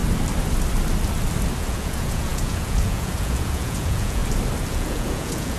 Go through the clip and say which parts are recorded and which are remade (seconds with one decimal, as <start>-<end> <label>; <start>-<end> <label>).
0.0-1.6 recorded; 1.6-4.2 remade; 4.2-4.7 recorded; 4.7-5.6 remade